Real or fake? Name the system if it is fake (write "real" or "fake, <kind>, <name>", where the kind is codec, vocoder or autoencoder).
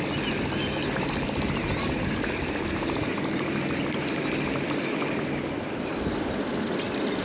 real